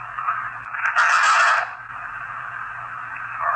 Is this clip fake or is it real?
real